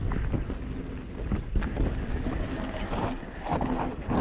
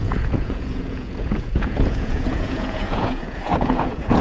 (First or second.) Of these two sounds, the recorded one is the first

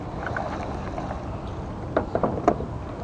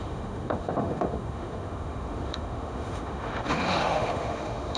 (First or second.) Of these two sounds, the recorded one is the first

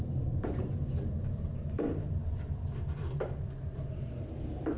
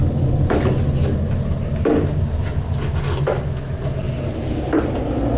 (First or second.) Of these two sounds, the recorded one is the second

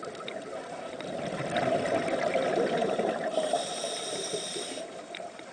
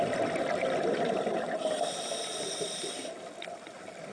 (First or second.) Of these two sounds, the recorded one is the second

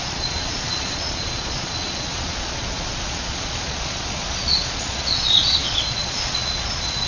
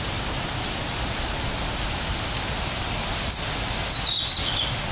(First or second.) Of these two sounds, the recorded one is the second